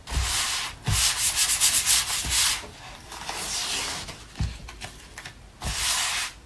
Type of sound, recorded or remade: recorded